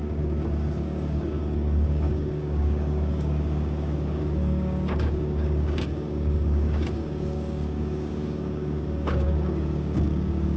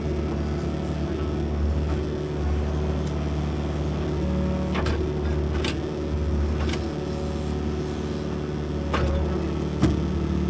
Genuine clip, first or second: second